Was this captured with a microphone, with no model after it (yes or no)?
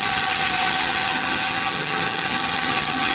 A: no